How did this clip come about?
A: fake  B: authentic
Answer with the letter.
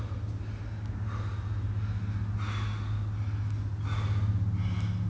B